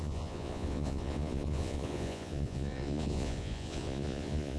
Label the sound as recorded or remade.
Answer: remade